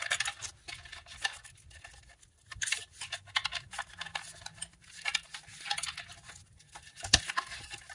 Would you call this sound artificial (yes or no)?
no